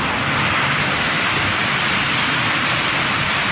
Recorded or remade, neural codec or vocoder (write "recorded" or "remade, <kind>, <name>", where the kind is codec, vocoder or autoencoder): recorded